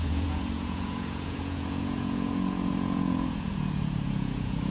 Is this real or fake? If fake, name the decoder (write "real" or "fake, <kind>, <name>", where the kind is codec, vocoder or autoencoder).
fake, vocoder, Vocos